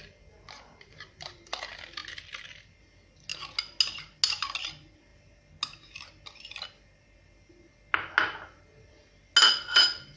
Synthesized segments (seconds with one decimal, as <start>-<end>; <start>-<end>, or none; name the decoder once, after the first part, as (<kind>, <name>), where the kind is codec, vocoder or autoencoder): none